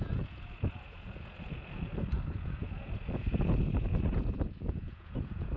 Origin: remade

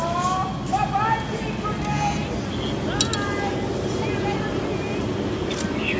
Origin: recorded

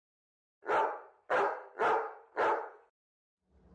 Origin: recorded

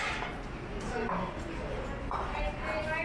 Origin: recorded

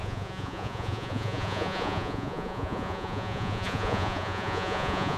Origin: remade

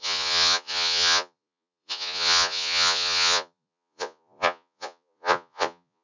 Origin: remade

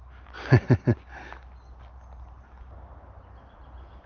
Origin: recorded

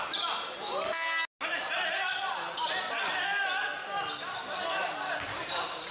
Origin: recorded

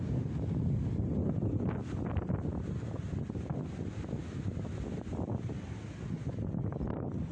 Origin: recorded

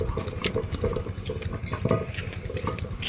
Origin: recorded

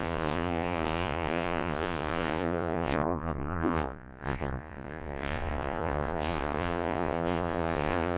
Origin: remade